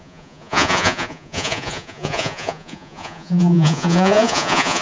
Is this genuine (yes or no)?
no